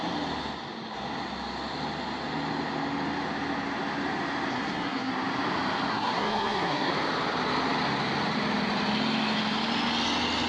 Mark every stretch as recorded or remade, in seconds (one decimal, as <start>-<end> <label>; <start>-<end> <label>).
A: 0.0-4.5 recorded; 4.5-5.1 remade; 5.1-5.9 recorded; 5.9-6.9 remade; 6.9-10.5 recorded